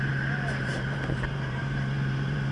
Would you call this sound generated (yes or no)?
yes